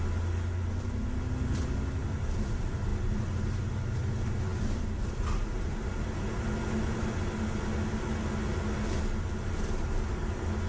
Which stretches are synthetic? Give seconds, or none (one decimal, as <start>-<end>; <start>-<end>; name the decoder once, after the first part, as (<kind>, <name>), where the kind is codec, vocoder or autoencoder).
none